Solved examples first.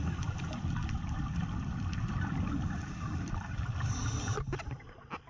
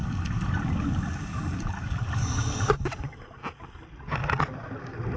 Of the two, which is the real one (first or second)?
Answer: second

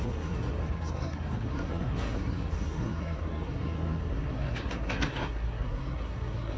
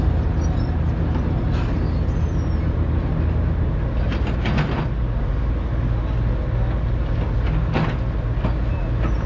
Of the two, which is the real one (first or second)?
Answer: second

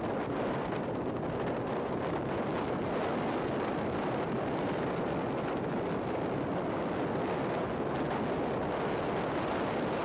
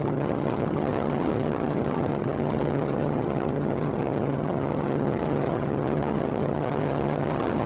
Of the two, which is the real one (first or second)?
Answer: first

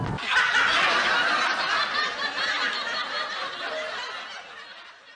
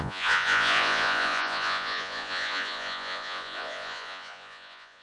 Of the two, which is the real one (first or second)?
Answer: first